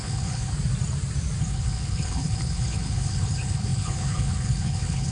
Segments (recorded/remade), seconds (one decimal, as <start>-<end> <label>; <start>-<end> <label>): 0.0-0.5 remade; 0.5-1.4 recorded; 1.4-5.1 remade